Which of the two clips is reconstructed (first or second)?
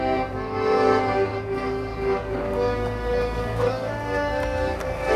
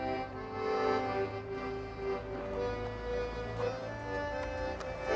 first